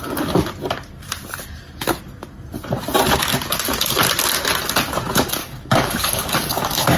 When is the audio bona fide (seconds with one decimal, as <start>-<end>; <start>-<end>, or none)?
0.0-5.4